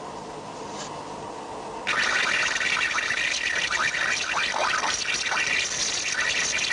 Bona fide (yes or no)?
yes